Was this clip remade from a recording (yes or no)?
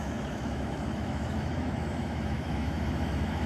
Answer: yes